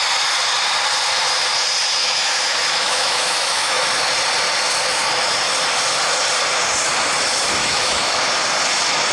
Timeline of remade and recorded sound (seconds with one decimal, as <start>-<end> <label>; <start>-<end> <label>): 0.0-2.0 recorded; 2.0-3.8 remade; 3.8-7.6 recorded; 7.6-8.2 remade; 8.2-9.1 recorded

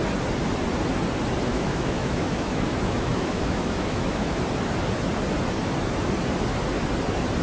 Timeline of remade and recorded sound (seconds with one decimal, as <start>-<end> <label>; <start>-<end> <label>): 0.0-1.5 recorded; 1.5-4.4 remade; 4.4-7.4 recorded